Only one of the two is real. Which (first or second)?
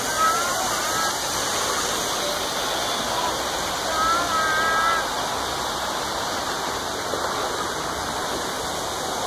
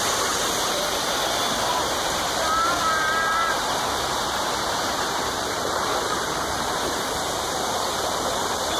first